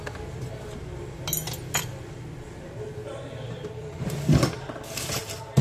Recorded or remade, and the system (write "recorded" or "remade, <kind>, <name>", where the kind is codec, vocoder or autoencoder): recorded